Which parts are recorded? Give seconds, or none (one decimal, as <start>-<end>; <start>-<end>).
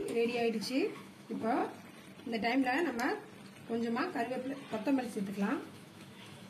1.6-5.0